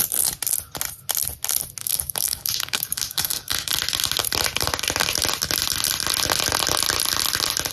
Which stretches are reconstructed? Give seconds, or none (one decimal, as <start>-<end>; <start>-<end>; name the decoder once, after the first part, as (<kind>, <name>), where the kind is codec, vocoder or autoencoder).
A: 1.8-3.7 (codec, DAC)